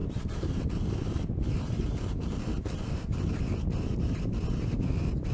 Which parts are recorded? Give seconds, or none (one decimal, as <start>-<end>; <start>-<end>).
0.6-1.0; 3.1-5.3